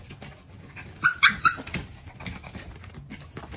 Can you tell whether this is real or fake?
real